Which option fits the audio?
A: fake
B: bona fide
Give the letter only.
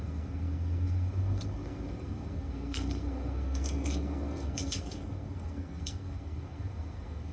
A